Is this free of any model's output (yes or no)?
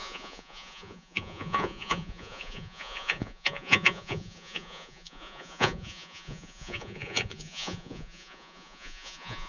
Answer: no